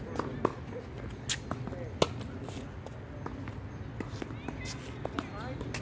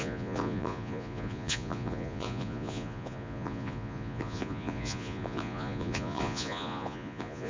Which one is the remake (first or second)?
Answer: second